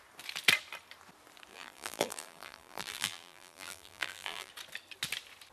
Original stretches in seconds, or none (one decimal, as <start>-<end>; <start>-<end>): 0.0-1.5; 4.5-5.5